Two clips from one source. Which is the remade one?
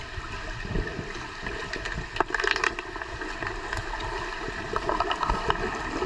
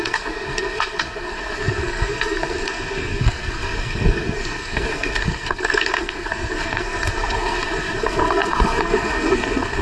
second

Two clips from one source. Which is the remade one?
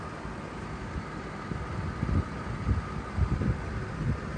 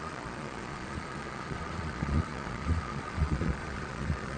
second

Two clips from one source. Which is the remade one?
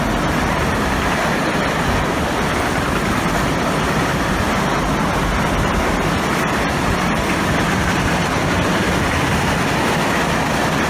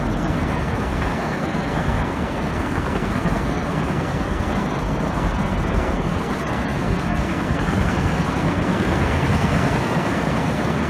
second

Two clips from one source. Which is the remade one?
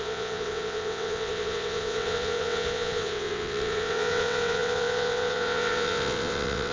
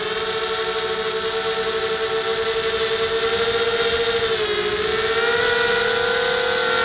first